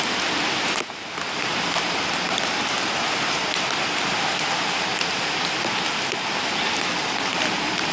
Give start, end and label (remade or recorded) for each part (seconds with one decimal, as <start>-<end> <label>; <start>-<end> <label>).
0.0-1.5 recorded; 1.5-5.7 remade; 5.7-7.0 recorded; 7.0-7.9 remade